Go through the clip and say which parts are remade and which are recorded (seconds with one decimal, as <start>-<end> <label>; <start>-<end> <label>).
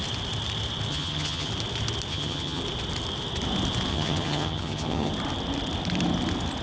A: 0.0-0.9 recorded; 0.9-1.5 remade; 1.5-2.1 recorded; 2.1-2.6 remade; 2.6-3.9 recorded; 3.9-5.1 remade; 5.1-6.6 recorded